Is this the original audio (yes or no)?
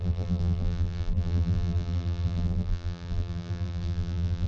no